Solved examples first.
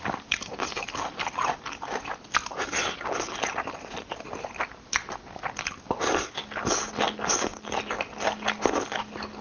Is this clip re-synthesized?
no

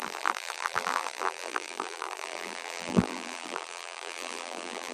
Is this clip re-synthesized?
yes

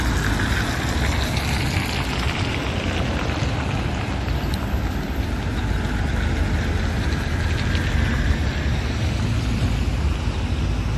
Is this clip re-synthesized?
no